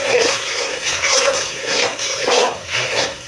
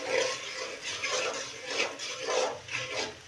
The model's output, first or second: first